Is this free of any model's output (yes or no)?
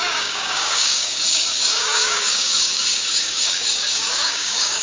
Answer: no